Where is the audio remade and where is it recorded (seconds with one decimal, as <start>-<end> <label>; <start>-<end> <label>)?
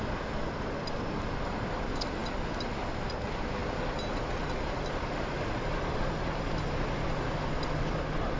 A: 0.0-8.4 recorded